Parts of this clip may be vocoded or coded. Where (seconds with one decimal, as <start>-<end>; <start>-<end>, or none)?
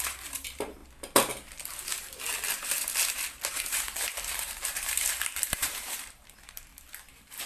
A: 0.0-0.8; 3.5-6.7